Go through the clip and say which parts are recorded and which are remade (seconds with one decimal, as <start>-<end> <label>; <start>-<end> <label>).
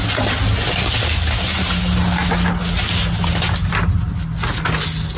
0.0-5.2 recorded